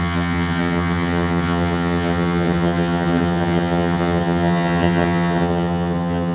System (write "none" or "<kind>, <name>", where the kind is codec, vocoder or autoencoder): vocoder, HiFi-GAN